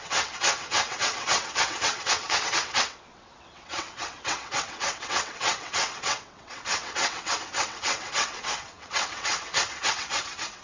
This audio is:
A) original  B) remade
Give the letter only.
B